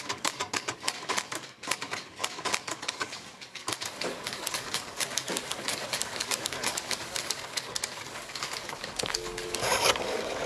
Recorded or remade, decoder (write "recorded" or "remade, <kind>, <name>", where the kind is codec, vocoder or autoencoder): remade, codec, DAC